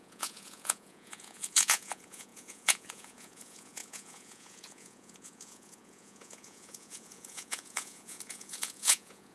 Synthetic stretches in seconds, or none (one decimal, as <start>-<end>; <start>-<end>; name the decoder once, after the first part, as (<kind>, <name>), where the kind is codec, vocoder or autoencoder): 0.0-9.3 (vocoder, Vocos)